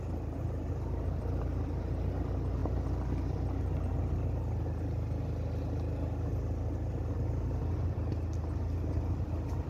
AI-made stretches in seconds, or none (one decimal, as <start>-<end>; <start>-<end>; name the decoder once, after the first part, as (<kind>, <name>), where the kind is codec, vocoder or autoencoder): none